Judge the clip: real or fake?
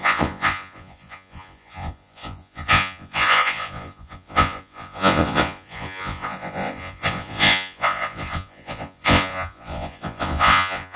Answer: fake